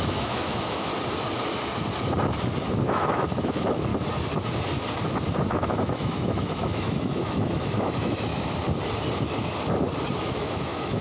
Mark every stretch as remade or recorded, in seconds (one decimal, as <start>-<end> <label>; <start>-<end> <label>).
0.0-0.9 remade; 0.9-2.8 recorded; 2.8-3.9 remade; 3.9-5.5 recorded; 5.5-8.3 remade; 8.3-10.2 recorded; 10.2-11.0 remade